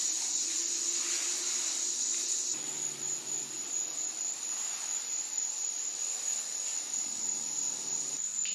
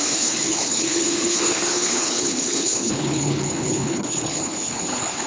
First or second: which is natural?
first